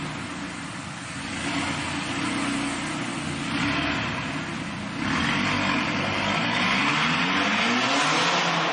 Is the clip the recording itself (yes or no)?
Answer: yes